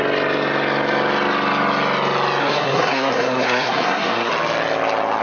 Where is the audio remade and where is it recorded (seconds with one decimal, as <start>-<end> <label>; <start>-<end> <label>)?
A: 0.0-2.4 recorded; 2.4-4.3 remade; 4.3-5.2 recorded